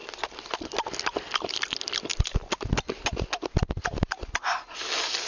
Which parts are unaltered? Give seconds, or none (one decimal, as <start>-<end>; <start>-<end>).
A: 0.0-5.3